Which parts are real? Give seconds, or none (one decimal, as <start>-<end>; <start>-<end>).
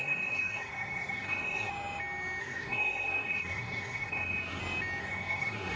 1.7-2.4; 4.6-5.0